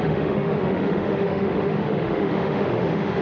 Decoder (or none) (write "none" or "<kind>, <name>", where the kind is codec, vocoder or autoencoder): autoencoder, DAC-VAE